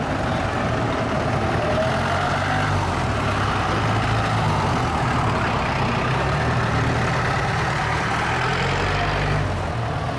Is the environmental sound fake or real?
real